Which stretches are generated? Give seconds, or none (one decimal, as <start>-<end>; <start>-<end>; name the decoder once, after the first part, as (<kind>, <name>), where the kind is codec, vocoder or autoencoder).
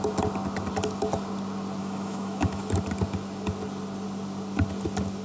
1.8-2.6 (autoencoder, DAC-VAE)